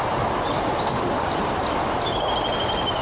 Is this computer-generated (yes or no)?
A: no